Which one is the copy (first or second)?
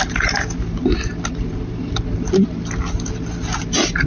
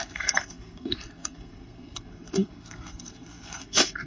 second